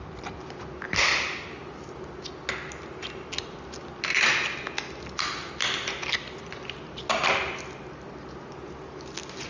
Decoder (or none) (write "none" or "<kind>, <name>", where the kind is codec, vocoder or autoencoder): none